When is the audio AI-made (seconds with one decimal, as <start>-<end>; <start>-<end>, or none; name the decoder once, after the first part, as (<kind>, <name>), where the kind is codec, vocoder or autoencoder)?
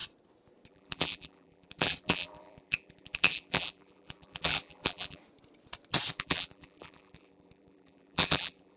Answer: 0.7-5.2 (vocoder, BigVGAN v2); 6.1-8.8